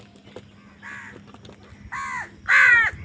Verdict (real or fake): real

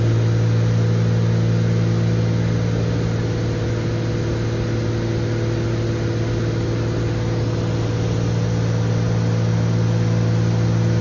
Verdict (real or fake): real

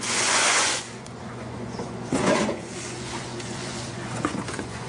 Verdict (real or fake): fake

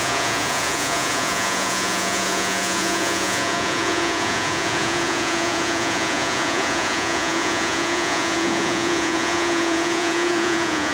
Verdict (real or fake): fake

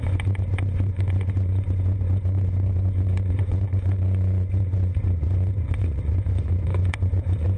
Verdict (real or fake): fake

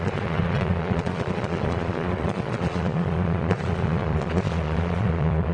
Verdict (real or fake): fake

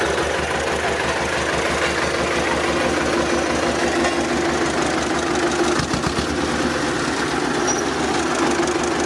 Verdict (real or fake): real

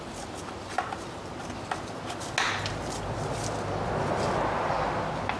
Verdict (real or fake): real